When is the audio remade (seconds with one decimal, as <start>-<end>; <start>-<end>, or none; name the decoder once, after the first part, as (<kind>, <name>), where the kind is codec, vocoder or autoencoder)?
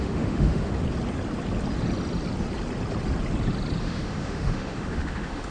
0.0-0.7 (autoencoder, DAC-VAE); 3.8-5.5